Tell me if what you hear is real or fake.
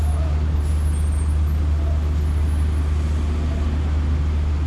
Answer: real